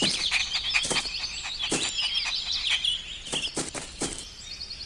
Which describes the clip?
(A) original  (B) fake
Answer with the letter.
A